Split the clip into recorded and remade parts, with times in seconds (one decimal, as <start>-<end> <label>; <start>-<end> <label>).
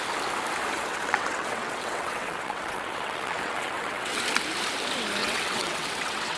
0.0-0.9 recorded; 0.9-4.2 remade; 4.2-5.2 recorded; 5.2-6.4 remade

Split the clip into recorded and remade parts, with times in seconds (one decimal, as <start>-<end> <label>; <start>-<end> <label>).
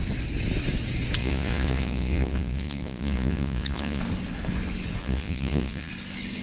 0.0-1.2 recorded; 1.2-4.0 remade; 4.0-5.0 recorded; 5.0-5.9 remade; 5.9-6.4 recorded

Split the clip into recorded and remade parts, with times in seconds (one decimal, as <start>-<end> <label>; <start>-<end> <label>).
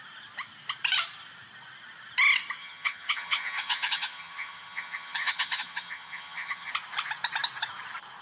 0.0-2.6 recorded; 2.6-6.7 remade; 6.7-8.2 recorded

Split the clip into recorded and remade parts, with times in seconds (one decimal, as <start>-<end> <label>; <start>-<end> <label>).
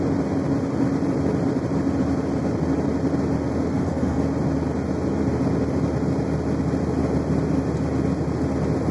0.0-3.7 recorded; 3.7-4.2 remade; 4.2-8.9 recorded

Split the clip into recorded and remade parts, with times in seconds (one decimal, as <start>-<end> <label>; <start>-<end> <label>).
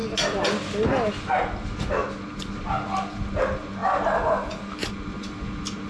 0.0-5.9 recorded